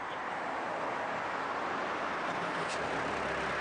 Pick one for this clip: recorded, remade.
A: recorded